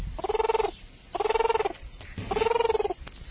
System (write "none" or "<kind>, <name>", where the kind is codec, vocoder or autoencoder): none